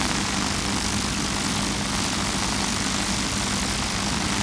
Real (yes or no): yes